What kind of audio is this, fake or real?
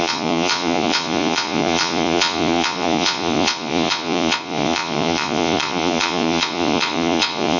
fake